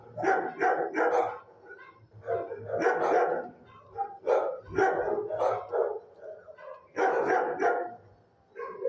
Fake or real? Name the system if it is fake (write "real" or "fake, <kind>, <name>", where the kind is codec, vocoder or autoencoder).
real